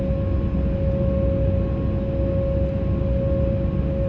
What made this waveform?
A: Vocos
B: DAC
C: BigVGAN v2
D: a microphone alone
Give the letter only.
D